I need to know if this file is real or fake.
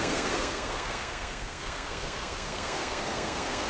fake